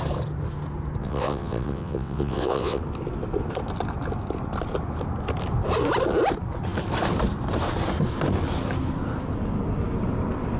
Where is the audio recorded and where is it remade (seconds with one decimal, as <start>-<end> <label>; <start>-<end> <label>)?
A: 0.0-1.0 recorded; 1.0-2.8 remade; 2.8-10.6 recorded